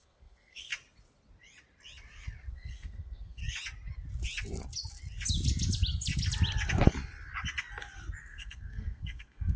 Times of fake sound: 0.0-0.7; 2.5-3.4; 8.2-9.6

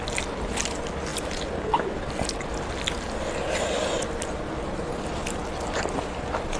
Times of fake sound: none

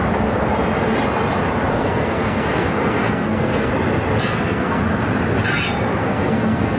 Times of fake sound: 1.7-3.7; 4.2-4.8; 6.0-6.8